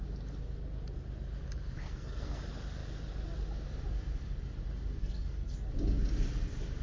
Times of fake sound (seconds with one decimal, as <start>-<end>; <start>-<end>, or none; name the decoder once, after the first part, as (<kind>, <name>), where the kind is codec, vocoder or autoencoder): 1.8-2.4 (codec, SNAC); 5.0-5.7